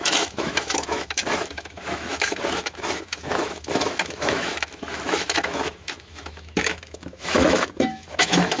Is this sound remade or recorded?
remade